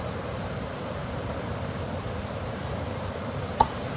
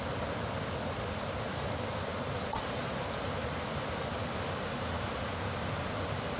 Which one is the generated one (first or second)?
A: first